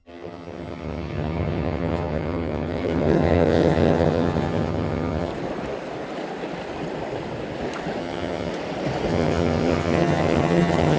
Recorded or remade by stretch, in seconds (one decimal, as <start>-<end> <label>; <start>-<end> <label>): 0.0-5.3 remade; 5.3-8.0 recorded; 8.0-8.5 remade; 8.5-9.1 recorded; 9.1-11.0 remade